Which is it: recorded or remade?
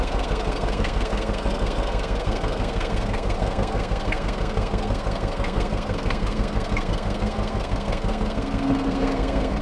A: remade